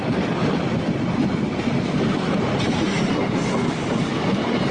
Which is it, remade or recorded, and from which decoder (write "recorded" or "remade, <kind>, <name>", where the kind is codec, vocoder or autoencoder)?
recorded